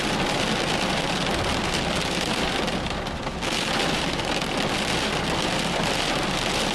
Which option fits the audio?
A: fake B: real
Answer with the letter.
B